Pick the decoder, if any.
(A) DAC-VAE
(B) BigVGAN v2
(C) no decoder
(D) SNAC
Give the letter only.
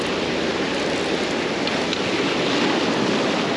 C